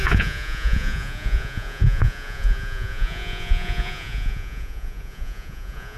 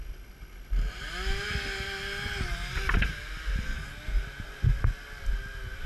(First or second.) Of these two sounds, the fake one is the first